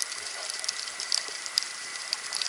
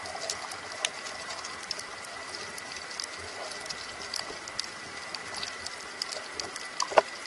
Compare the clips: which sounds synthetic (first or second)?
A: first